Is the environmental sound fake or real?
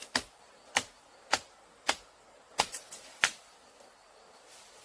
fake